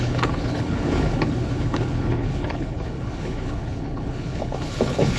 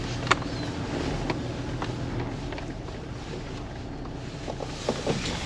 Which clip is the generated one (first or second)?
first